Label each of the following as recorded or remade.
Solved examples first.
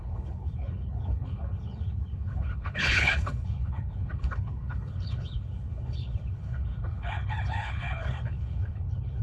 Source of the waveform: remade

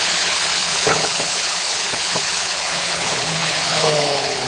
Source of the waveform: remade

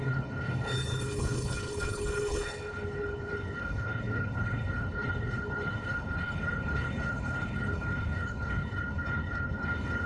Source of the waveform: remade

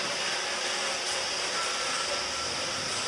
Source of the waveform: recorded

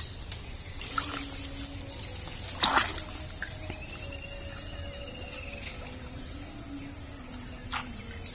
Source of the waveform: recorded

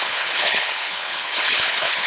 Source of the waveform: remade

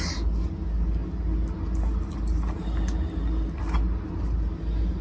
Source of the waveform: recorded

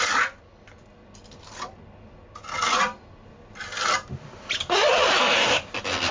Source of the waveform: recorded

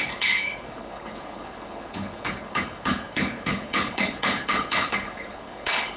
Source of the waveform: remade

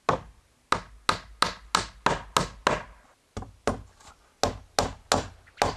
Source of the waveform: recorded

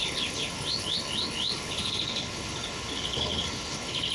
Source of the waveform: remade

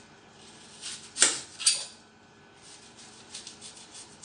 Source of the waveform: recorded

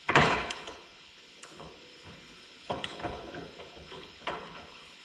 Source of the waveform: remade